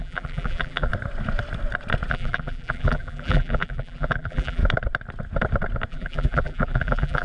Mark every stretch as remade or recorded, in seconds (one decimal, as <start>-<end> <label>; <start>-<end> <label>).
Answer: 0.0-0.9 remade; 0.9-2.1 recorded; 2.1-4.6 remade; 4.6-5.9 recorded; 5.9-7.2 remade